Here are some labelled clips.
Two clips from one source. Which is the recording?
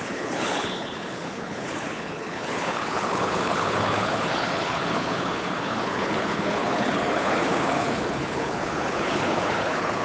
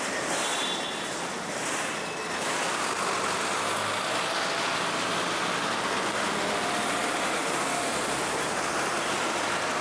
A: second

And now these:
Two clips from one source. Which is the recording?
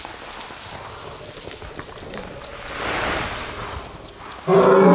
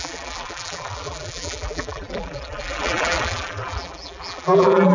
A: first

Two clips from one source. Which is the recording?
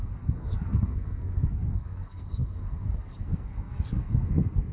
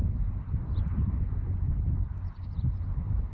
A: second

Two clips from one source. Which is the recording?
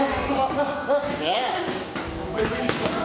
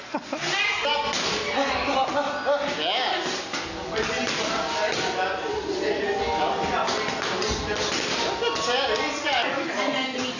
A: second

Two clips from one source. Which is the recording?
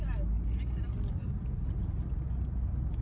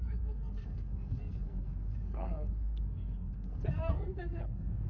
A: first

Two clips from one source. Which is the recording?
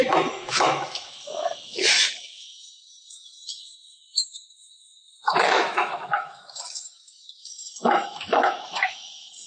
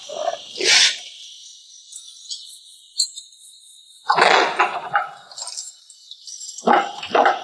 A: second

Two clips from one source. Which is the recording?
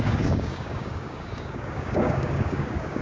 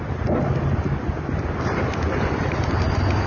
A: second